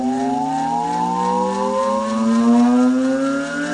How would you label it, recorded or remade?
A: recorded